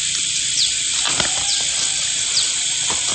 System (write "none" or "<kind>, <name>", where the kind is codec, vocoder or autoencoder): none